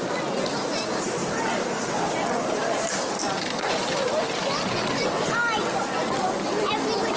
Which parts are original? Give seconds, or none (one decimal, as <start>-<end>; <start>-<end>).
0.0-1.2; 4.7-7.2